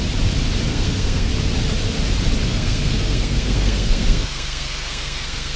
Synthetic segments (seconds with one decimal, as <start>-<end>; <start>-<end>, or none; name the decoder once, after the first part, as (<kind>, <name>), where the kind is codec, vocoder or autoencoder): 0.7-1.3 (codec, SNAC); 2.5-5.6